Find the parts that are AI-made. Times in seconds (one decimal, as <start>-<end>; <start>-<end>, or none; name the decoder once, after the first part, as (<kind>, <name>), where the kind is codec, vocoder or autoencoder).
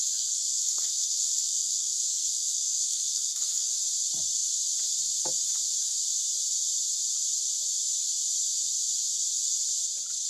0.0-3.7 (codec, SNAC)